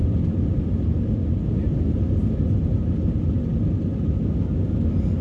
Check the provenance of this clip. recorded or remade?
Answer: recorded